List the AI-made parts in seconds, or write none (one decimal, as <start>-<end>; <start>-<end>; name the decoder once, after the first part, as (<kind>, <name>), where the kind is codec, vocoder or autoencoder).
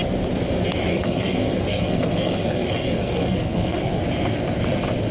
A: 0.9-4.0 (codec, SNAC)